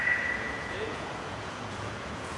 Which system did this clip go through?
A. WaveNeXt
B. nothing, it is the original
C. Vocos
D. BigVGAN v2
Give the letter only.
C